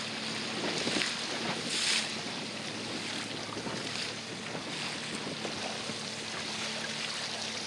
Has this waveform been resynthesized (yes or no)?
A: no